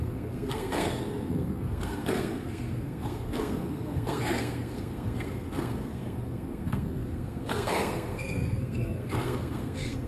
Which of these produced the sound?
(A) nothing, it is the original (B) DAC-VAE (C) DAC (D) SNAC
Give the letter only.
D